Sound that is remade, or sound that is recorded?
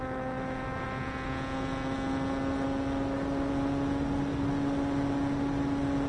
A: recorded